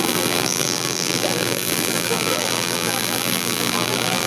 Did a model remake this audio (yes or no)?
yes